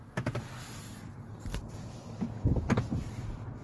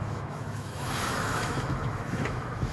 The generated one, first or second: second